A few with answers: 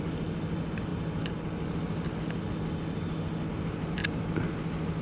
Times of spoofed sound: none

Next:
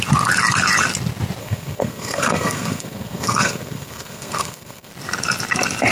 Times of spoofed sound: 1.4-4.9 (codec, SNAC)

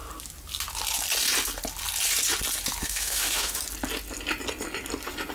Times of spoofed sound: 2.8-3.6 (autoencoder, DAC-VAE)

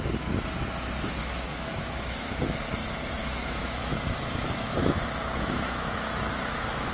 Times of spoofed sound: 1.2-2.6 (autoencoder, DAC-VAE); 3.2-6.9

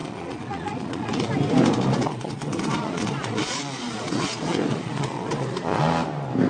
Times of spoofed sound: 0.0-1.3 (vocoder, Vocos); 1.9-5.8

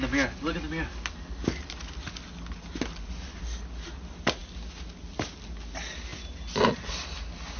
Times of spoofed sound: none